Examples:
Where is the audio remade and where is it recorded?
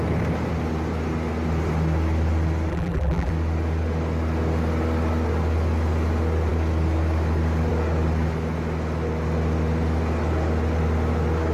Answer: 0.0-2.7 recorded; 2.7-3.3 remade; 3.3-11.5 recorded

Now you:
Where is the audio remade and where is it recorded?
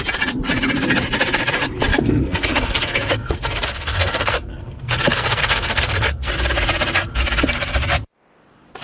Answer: 0.0-1.9 recorded; 1.9-6.3 remade; 6.3-8.8 recorded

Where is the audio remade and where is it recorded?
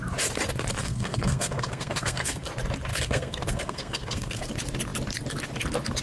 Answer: 0.0-0.8 recorded; 0.8-2.5 remade; 2.5-2.9 recorded; 2.9-4.5 remade; 4.5-6.0 recorded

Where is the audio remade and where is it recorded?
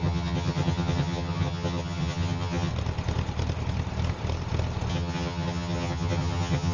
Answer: 0.0-2.7 remade; 2.7-4.9 recorded; 4.9-6.7 remade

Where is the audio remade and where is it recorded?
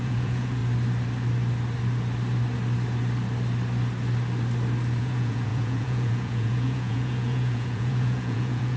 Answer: 0.0-0.6 remade; 0.6-5.0 recorded; 5.0-8.8 remade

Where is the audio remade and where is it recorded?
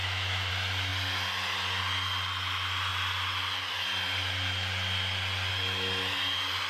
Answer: 0.0-0.5 remade; 0.5-6.7 recorded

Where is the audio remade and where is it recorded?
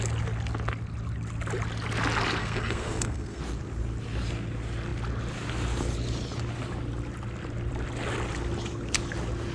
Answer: 0.0-2.4 recorded; 2.4-3.4 remade; 3.4-9.5 recorded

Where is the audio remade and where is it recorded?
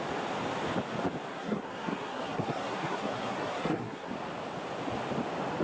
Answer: 0.0-1.3 recorded; 1.3-4.1 remade; 4.1-5.6 recorded